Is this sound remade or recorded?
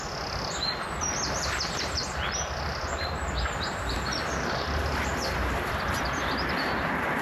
remade